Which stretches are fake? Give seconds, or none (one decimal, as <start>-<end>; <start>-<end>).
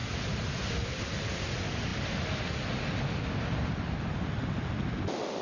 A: none